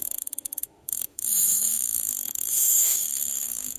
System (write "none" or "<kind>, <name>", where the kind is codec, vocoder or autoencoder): autoencoder, DAC-VAE